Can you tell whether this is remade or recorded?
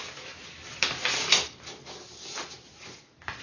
recorded